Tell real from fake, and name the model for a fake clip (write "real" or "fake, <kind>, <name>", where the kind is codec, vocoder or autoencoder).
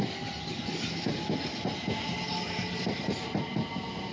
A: real